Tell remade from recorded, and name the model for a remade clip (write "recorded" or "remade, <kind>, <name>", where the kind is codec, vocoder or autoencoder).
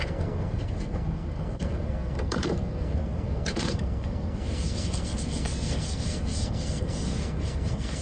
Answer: remade, codec, SNAC